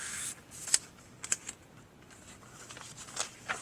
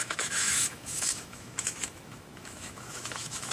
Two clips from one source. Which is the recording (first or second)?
first